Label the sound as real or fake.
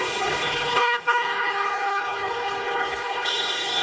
fake